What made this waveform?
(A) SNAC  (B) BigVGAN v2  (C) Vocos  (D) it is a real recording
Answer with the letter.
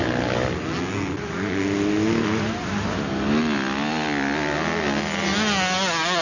D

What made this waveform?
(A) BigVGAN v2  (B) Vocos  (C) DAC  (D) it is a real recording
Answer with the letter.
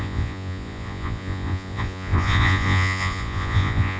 B